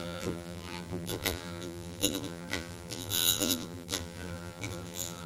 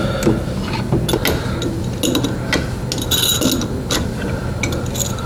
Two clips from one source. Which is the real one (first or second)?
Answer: second